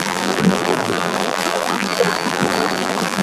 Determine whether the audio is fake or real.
fake